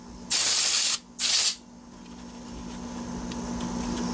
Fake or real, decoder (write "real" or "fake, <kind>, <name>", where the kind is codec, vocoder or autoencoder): real